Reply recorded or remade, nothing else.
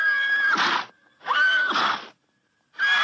recorded